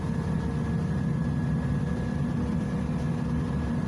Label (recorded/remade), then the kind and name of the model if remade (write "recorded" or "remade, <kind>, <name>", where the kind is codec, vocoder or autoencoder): recorded